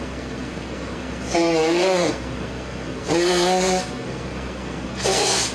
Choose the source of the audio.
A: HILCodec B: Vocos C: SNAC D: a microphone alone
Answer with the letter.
C